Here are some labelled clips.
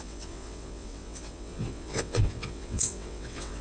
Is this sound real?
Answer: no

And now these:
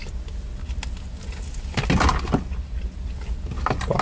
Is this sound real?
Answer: yes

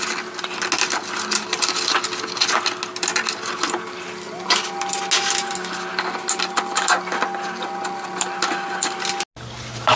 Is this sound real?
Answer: yes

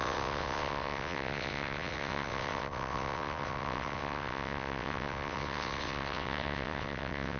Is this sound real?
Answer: no